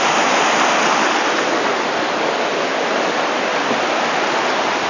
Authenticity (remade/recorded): recorded